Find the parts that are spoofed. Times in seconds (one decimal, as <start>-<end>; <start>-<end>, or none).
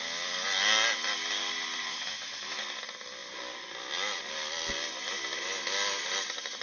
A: 1.9-2.6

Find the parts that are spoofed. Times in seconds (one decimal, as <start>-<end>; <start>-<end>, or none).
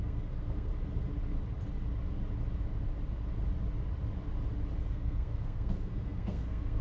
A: 0.0-0.7; 4.8-6.8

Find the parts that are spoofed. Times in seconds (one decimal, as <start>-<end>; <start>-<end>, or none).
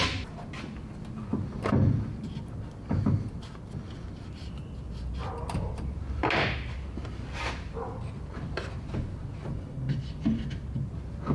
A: 9.4-10.0